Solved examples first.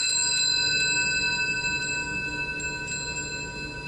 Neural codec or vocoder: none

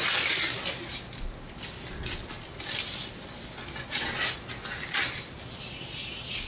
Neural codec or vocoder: none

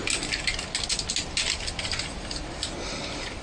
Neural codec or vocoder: none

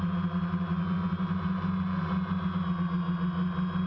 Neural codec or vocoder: none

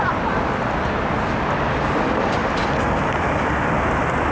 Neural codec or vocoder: none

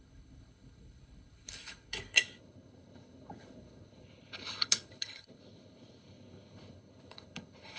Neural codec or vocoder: codec, HILCodec